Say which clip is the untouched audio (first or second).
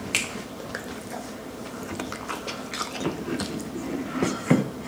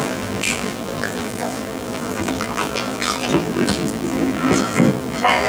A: first